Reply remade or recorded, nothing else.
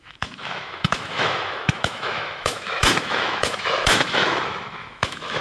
remade